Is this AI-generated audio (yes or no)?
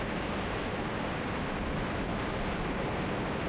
no